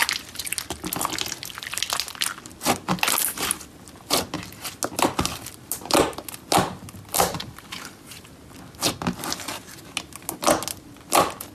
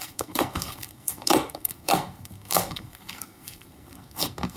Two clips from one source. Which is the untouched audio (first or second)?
first